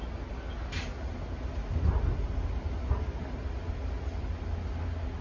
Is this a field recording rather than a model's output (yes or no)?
yes